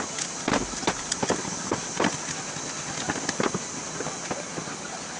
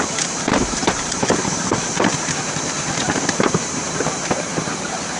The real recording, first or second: first